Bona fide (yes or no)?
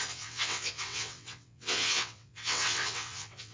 no